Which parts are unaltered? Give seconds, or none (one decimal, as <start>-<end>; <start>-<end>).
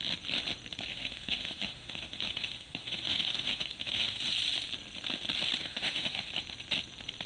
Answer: 0.0-0.9; 4.2-5.6; 6.3-7.3